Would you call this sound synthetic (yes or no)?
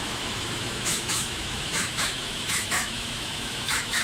yes